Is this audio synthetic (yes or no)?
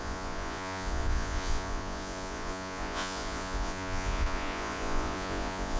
yes